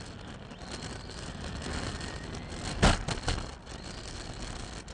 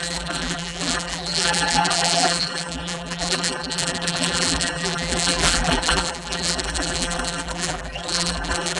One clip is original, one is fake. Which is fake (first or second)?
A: second